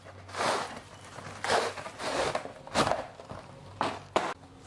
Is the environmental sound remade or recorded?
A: recorded